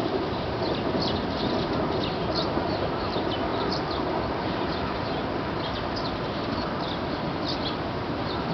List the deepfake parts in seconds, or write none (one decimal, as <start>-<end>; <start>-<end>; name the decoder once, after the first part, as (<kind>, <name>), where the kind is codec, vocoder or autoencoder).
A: 0.0-0.7 (vocoder, BigVGAN v2); 3.5-6.0